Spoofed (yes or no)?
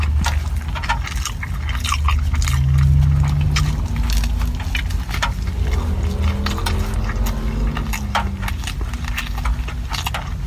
no